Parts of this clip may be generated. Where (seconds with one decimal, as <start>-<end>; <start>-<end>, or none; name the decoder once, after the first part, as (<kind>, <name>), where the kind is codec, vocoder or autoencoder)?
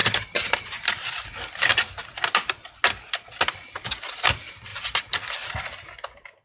none